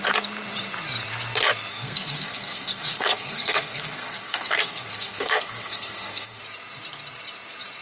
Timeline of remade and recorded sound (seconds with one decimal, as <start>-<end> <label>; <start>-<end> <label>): 0.0-1.7 recorded; 1.7-6.4 remade; 6.4-7.8 recorded